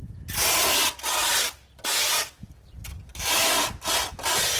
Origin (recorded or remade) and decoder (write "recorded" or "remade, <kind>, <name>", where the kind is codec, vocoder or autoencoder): recorded